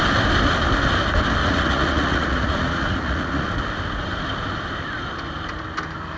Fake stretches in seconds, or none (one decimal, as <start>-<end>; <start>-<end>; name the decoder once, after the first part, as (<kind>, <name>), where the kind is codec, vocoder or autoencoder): 1.4-3.5 (vocoder, Vocos)